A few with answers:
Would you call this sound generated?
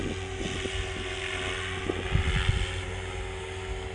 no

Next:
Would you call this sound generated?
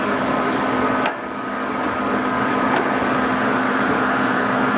yes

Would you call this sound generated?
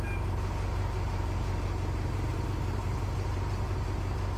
no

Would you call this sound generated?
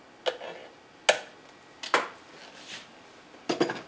no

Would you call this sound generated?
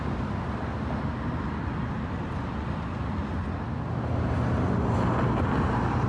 no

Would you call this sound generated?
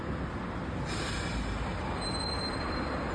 no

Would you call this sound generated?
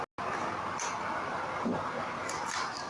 no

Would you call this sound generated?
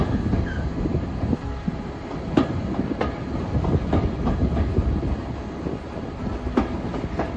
no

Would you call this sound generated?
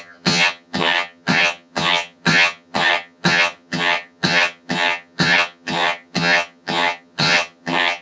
yes